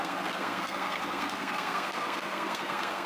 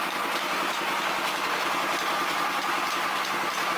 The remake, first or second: first